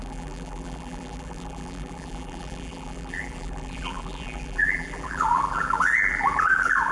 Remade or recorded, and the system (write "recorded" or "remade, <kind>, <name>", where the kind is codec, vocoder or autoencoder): remade, vocoder, BigVGAN v2